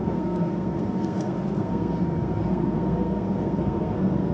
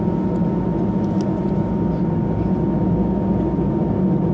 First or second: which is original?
second